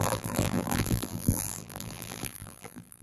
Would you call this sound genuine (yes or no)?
no